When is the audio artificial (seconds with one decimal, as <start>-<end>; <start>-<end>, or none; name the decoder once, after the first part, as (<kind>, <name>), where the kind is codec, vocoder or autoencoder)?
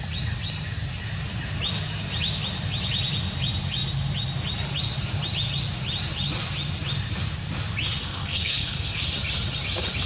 8.0-9.0 (codec, SNAC)